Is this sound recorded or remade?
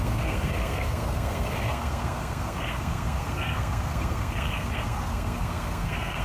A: remade